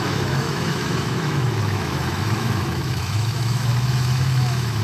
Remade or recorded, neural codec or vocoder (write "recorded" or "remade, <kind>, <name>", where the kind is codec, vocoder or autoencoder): remade, autoencoder, DAC-VAE